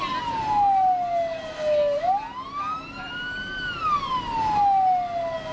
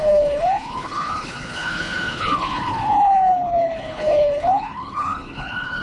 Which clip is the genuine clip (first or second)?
first